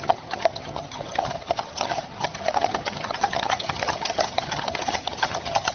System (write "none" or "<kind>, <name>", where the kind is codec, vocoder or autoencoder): vocoder, HiFi-GAN